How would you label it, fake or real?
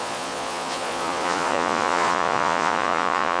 fake